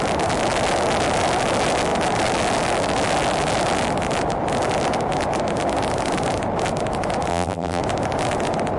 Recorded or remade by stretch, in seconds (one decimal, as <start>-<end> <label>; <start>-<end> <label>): 0.0-7.3 recorded; 7.3-7.8 remade; 7.8-8.8 recorded